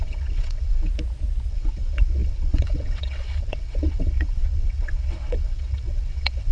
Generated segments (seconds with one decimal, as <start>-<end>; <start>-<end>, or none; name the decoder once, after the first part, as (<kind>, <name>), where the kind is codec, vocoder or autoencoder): 0.0-0.9 (vocoder, WaveNeXt); 1.5-6.5